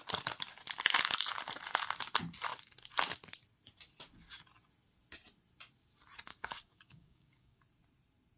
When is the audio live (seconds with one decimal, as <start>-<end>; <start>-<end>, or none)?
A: 0.0-6.3; 7.6-8.4